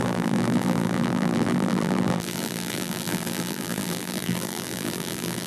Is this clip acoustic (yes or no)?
no